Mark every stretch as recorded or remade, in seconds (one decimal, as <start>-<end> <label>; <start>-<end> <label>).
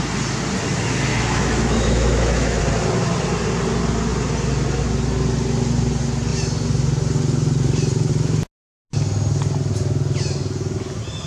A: 0.0-1.1 recorded; 1.1-2.6 remade; 2.6-11.3 recorded